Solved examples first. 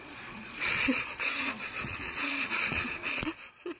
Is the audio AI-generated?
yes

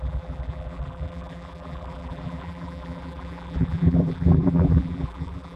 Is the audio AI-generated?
yes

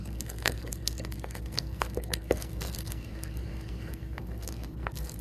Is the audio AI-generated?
yes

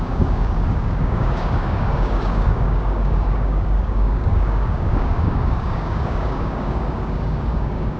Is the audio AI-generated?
yes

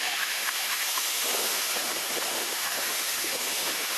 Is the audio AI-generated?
yes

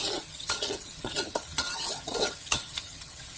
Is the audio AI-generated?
yes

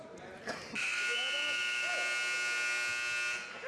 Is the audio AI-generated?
no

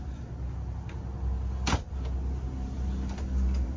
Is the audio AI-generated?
no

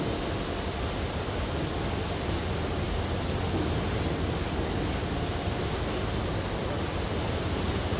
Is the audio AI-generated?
no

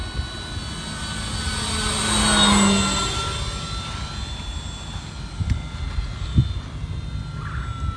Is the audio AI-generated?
no